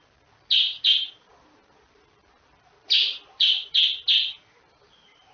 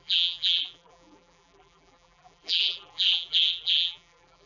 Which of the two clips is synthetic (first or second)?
second